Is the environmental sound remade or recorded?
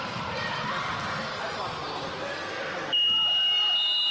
recorded